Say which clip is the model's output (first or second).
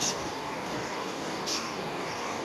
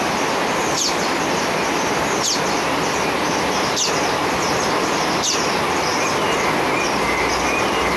first